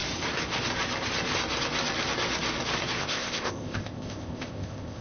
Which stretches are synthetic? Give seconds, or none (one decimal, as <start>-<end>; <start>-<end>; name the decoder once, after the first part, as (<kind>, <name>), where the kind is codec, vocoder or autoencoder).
3.0-5.0 (codec, ZipCodec)